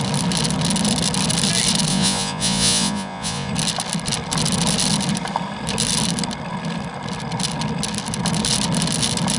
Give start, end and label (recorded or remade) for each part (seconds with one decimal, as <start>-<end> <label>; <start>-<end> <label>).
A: 0.0-1.9 recorded; 1.9-3.5 remade; 3.5-9.4 recorded